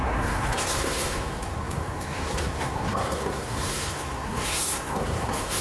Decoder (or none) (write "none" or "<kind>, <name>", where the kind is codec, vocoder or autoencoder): codec, SNAC